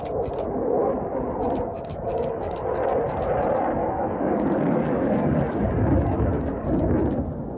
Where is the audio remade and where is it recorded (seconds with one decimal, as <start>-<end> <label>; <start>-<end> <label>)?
0.0-1.7 recorded; 1.7-2.6 remade; 2.6-3.8 recorded; 3.8-6.8 remade; 6.8-7.6 recorded